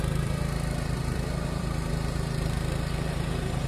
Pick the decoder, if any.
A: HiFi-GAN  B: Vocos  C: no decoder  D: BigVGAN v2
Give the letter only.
D